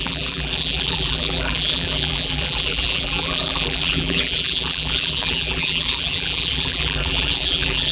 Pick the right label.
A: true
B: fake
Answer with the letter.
B